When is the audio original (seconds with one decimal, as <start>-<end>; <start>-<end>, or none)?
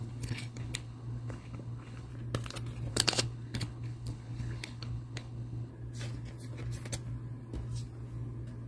2.1-2.9; 5.7-8.7